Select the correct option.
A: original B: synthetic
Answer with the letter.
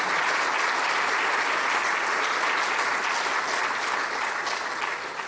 A